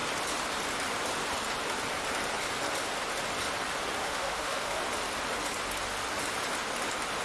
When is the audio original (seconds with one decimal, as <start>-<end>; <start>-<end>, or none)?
0.0-4.0; 4.8-7.2